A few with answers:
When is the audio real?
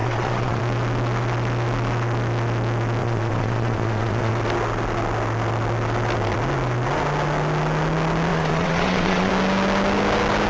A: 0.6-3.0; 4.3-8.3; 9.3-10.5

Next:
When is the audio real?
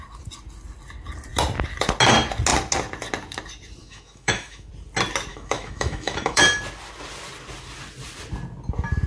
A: 0.0-3.8; 4.7-5.3; 6.4-9.1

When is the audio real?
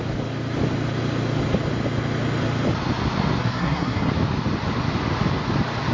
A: 0.0-3.4; 4.1-5.9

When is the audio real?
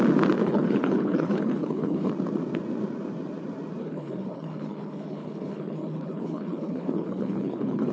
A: 0.0-0.4; 2.1-3.8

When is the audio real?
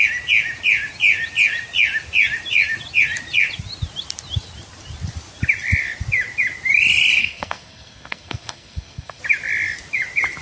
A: 0.0-7.2; 9.2-10.4